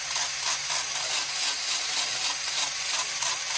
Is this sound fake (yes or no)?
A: no